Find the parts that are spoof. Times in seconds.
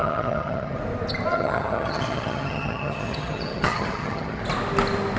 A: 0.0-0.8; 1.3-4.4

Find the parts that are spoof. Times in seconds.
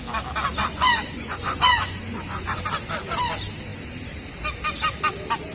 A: 0.6-2.6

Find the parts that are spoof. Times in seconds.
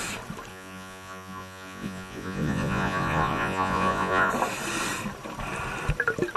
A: 0.5-4.3